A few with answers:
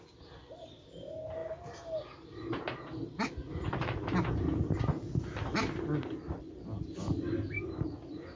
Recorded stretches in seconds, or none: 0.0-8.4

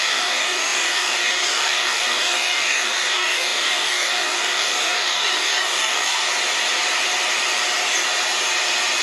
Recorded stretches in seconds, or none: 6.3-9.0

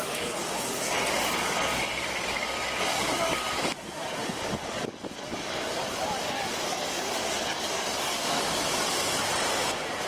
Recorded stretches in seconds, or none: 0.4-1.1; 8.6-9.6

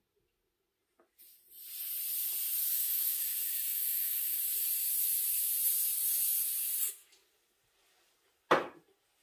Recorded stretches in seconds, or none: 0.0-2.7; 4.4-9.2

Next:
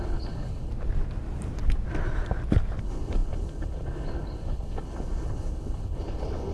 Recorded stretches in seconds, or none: 0.7-2.8

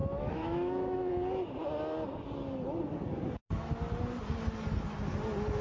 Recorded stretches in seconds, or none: 1.1-5.6